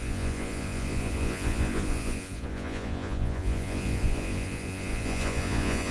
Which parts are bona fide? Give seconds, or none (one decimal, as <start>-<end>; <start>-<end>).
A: none